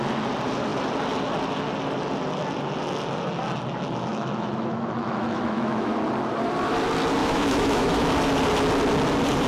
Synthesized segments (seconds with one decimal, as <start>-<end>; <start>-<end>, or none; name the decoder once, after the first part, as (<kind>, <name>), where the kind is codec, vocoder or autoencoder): 4.1-6.0 (autoencoder, DAC-VAE); 7.2-8.1